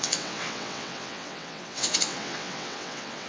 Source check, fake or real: fake